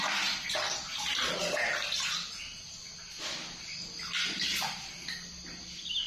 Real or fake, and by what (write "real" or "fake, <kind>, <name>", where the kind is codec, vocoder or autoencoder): real